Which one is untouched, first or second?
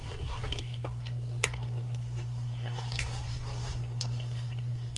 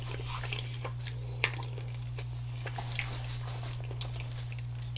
second